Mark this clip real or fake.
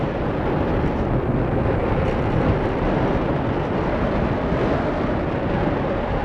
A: real